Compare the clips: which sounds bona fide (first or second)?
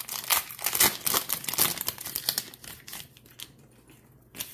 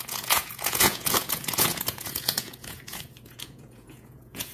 first